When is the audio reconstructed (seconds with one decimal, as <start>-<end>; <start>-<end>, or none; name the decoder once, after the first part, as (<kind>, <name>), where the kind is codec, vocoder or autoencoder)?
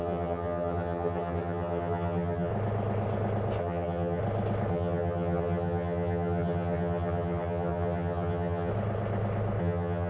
0.0-2.5 (vocoder, HiFi-GAN); 3.6-4.2; 4.7-8.7; 9.6-10.1